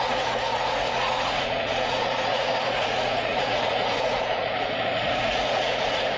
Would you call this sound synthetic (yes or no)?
yes